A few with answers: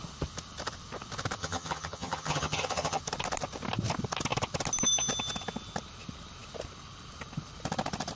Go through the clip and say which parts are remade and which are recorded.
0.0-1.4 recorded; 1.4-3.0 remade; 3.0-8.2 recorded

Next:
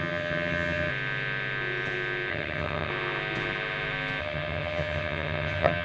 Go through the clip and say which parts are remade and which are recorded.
0.0-0.9 remade; 0.9-2.3 recorded; 2.3-2.9 remade; 2.9-4.2 recorded; 4.2-5.8 remade

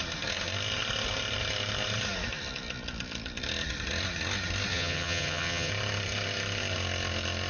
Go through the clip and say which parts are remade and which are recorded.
0.0-4.7 recorded; 4.7-5.7 remade; 5.7-7.5 recorded

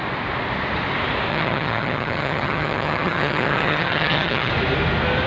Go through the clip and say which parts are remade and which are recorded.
0.0-1.3 recorded; 1.3-4.5 remade; 4.5-5.3 recorded

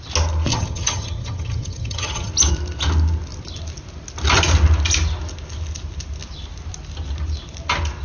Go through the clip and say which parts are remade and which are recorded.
0.0-0.5 recorded; 0.5-2.3 remade; 2.3-8.0 recorded

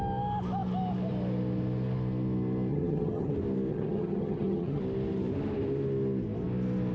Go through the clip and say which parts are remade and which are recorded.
0.0-2.7 recorded; 2.7-3.3 remade; 3.3-3.7 recorded; 3.7-4.8 remade; 4.8-6.9 recorded